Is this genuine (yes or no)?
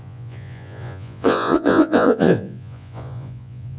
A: no